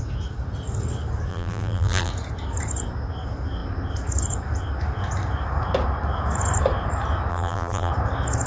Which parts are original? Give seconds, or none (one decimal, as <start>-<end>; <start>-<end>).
0.0-1.3; 2.1-7.3; 7.9-8.5